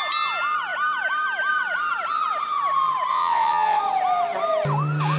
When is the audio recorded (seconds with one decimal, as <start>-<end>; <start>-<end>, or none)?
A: 0.0-3.1; 3.8-5.2